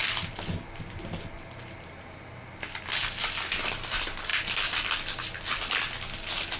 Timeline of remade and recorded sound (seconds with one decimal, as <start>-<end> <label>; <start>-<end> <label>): 0.0-6.6 recorded